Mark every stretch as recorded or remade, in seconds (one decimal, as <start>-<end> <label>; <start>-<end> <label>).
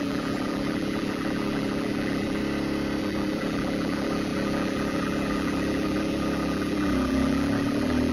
0.0-2.4 remade; 2.4-3.0 recorded; 3.0-8.1 remade